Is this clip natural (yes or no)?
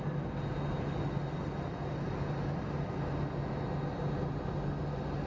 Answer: yes